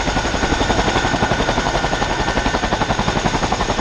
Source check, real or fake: real